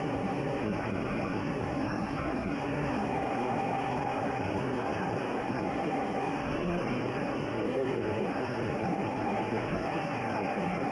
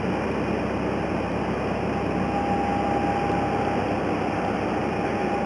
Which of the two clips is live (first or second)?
second